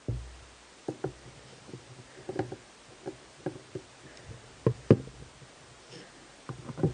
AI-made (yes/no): no